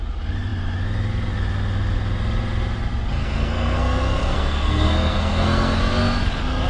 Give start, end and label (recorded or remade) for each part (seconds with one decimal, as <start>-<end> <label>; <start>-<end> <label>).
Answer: 0.0-3.1 recorded; 3.1-5.8 remade; 5.8-6.7 recorded